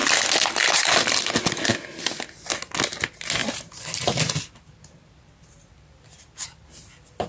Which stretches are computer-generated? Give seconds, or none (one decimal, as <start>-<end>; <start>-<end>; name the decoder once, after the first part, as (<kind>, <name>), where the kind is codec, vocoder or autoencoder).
none